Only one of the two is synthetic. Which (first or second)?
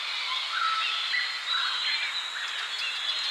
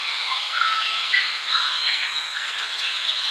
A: second